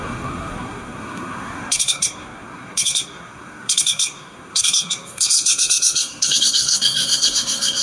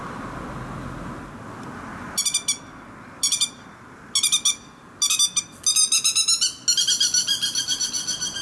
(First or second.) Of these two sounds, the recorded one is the second